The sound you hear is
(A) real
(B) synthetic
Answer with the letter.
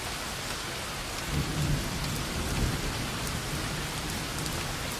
A